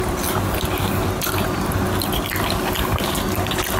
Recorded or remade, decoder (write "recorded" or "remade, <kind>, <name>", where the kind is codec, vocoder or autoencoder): recorded